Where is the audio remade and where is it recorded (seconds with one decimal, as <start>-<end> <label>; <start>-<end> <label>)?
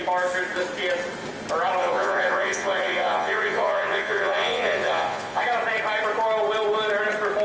0.0-1.8 recorded; 1.8-5.4 remade; 5.4-7.4 recorded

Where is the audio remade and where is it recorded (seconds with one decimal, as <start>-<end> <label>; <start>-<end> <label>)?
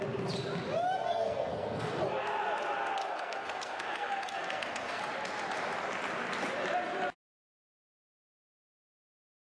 0.0-1.1 recorded; 1.1-2.0 remade; 2.0-3.0 recorded; 3.0-5.0 remade; 5.0-9.4 recorded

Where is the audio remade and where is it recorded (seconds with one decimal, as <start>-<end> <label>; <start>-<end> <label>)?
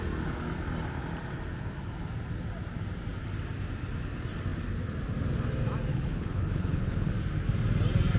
0.0-5.9 recorded; 5.9-7.1 remade; 7.1-8.2 recorded